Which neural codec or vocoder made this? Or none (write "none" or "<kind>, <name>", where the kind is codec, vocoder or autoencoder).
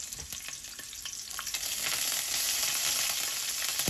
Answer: none